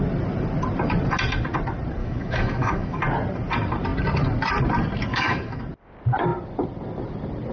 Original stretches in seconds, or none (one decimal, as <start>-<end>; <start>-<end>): 0.0-2.0; 3.0-5.1; 5.6-7.5